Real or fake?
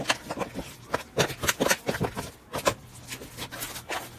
real